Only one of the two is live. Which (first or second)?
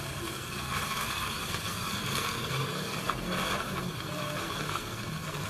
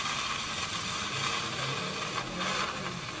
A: second